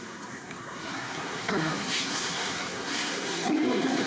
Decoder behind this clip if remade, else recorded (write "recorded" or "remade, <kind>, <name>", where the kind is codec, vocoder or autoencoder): remade, codec, SNAC